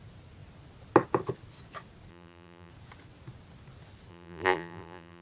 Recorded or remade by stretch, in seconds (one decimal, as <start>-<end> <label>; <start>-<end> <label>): 0.0-2.1 recorded; 2.1-2.7 remade; 2.7-4.1 recorded; 4.1-5.2 remade